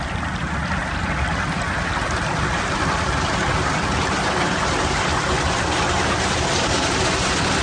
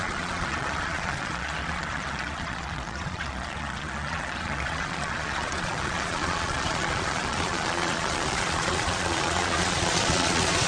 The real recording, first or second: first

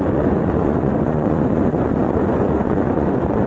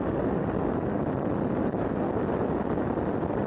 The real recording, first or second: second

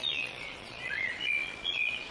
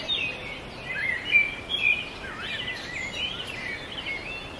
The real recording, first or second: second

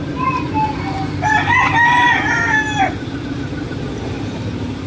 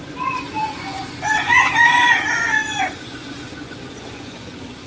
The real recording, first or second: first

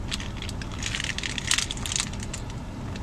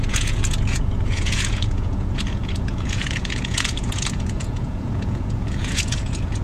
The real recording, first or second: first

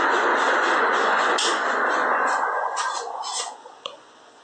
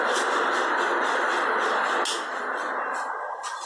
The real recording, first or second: second